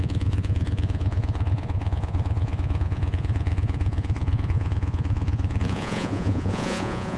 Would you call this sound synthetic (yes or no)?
yes